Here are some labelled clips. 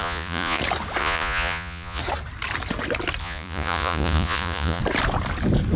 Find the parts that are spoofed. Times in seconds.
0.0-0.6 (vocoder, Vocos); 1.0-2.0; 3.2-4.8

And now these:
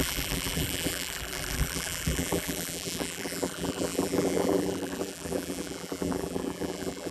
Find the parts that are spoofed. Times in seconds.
0.0-7.1 (vocoder, BigVGAN v2)